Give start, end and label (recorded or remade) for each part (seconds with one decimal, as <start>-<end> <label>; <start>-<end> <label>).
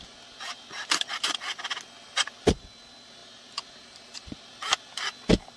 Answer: 0.0-5.6 recorded